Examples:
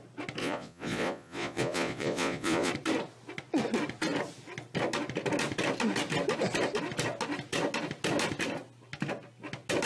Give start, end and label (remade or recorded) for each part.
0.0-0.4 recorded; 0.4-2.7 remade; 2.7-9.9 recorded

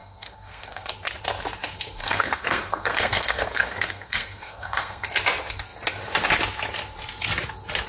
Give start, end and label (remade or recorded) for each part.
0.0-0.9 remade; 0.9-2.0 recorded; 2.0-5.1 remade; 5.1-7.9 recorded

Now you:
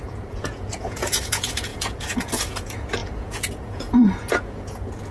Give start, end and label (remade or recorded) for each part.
0.0-5.1 remade

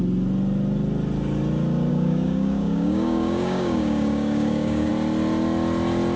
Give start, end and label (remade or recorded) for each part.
0.0-1.9 recorded; 1.9-4.9 remade; 4.9-6.2 recorded

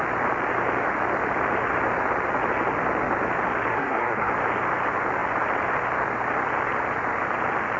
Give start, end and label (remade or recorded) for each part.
0.0-3.7 recorded; 3.7-4.3 remade; 4.3-7.8 recorded

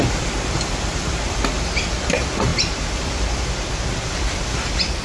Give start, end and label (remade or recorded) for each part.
0.0-5.0 remade

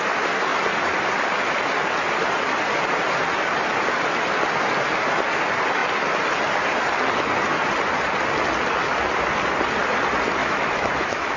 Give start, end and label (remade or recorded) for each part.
0.0-10.4 recorded; 10.4-11.4 remade

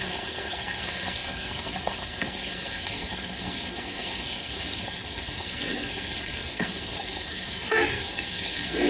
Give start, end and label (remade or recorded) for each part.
0.0-8.9 remade